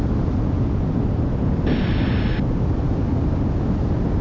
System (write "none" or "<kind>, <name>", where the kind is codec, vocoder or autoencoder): none